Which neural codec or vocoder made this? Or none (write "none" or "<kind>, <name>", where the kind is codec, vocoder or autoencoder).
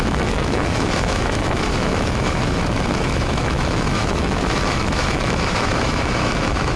autoencoder, DAC-VAE